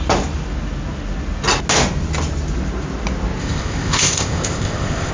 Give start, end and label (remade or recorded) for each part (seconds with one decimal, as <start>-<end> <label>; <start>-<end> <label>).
0.0-3.4 recorded; 3.4-5.1 remade